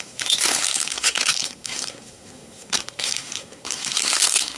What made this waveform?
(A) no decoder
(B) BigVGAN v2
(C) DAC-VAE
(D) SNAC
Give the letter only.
D